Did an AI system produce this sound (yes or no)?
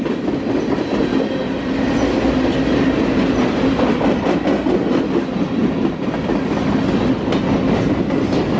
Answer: no